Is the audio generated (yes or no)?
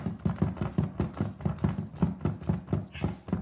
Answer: no